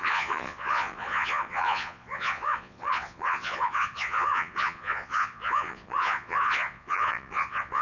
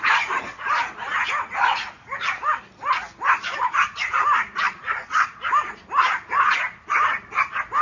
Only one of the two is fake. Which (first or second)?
first